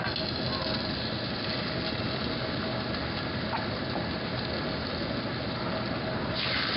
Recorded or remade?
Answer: recorded